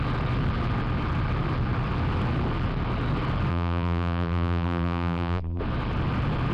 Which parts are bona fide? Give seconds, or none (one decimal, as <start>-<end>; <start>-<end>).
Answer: 0.0-3.5; 5.6-6.5